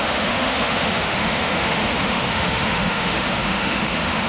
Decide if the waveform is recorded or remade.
remade